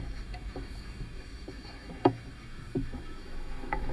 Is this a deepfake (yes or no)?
yes